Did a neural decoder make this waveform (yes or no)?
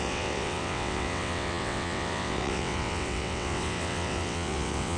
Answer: yes